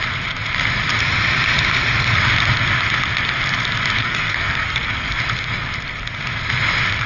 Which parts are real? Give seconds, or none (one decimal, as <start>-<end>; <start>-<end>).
0.0-4.0; 5.2-7.1